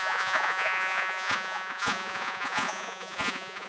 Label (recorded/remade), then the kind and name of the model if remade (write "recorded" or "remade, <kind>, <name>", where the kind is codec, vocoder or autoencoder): remade, vocoder, Vocos